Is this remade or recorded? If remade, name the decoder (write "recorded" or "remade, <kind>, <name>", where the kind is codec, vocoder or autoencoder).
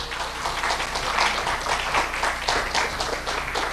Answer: recorded